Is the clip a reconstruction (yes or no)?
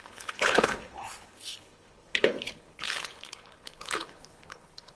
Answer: yes